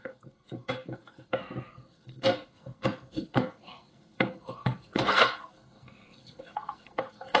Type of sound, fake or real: fake